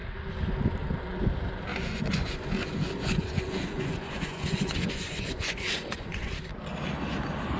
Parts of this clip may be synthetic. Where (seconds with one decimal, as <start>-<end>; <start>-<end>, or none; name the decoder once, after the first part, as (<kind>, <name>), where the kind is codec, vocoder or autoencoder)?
1.7-6.3 (vocoder, Vocos)